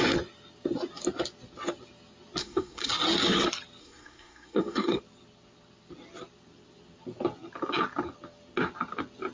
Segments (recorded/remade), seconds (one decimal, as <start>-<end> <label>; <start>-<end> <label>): 0.0-2.4 recorded; 2.4-2.9 remade; 2.9-3.8 recorded; 3.8-5.0 remade; 5.0-9.3 recorded